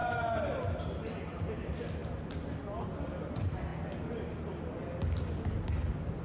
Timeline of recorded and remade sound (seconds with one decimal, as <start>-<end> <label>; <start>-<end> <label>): 0.0-6.2 recorded